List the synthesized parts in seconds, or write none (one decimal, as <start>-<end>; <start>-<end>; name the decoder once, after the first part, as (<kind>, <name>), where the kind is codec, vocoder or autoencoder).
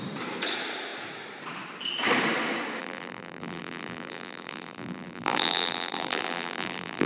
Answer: 2.8-7.1 (vocoder, BigVGAN v2)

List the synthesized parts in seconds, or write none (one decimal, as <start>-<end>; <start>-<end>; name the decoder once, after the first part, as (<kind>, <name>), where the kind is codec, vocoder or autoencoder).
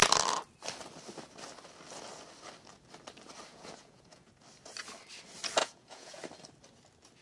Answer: 3.5-4.3 (vocoder, Vocos); 5.6-6.2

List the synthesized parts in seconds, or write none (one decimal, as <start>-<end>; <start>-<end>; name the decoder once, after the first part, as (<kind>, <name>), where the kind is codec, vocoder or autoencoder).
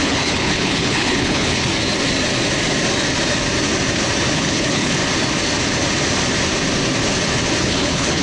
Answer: 0.0-1.7 (codec, HILCodec); 4.3-5.0; 7.6-8.2